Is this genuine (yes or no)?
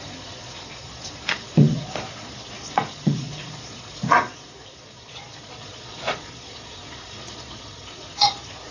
no